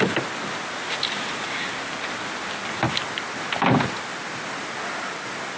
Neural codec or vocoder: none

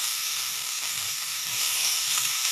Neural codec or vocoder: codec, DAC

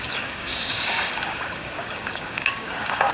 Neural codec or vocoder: codec, DAC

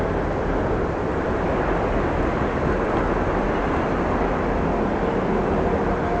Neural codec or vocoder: none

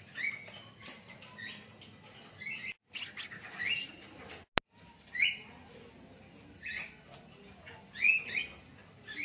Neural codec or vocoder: none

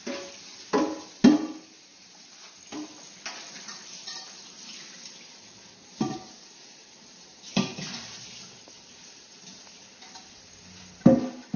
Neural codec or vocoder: none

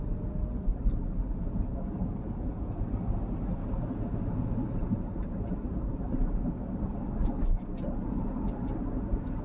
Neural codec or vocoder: none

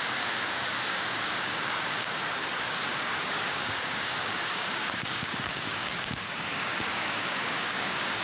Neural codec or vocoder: codec, DAC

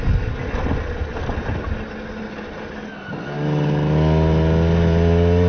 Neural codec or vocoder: none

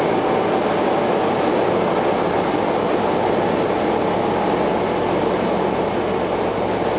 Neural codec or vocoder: none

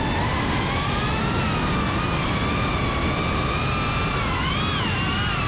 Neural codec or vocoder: none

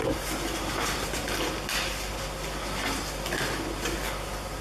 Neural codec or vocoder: none